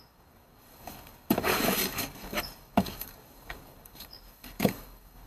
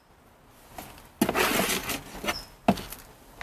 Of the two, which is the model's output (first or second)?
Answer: first